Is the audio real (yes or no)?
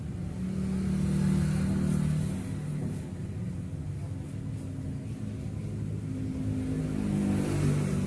yes